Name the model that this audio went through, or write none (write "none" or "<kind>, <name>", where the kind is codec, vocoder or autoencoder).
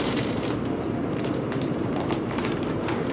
vocoder, BigVGAN v2